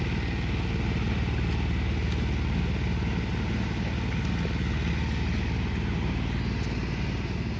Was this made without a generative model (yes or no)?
yes